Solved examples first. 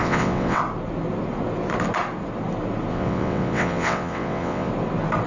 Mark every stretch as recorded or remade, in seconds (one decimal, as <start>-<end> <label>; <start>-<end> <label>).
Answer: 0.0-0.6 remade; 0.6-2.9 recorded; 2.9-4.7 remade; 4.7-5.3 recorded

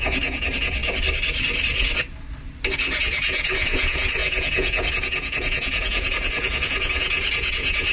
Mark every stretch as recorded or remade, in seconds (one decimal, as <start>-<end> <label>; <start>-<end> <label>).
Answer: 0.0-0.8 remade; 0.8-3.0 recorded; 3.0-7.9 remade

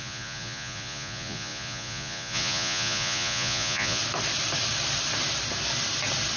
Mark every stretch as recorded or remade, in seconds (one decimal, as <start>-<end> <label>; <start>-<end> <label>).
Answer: 0.0-4.0 remade; 4.0-6.4 recorded